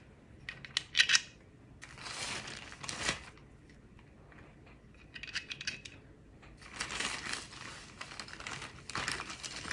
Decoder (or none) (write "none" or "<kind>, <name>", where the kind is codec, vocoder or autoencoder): none